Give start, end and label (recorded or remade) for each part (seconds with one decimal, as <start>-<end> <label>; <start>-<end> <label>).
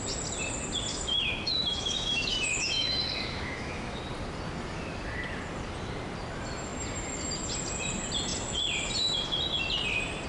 0.0-0.9 recorded; 0.9-4.0 remade; 4.0-10.3 recorded